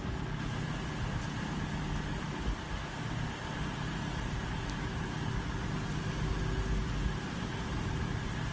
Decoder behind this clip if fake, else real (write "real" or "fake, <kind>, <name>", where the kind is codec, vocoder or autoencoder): real